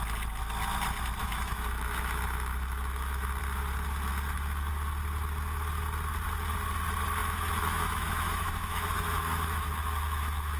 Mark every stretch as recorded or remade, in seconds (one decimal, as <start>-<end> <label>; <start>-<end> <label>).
0.0-1.2 recorded; 1.2-3.4 remade; 3.4-4.1 recorded; 4.1-4.7 remade; 4.7-7.2 recorded; 7.2-10.6 remade